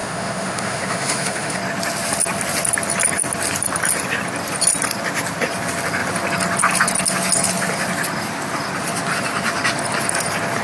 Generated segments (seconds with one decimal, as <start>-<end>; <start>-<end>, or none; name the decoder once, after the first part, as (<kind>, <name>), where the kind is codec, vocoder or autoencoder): 0.0-1.6 (autoencoder, DAC-VAE)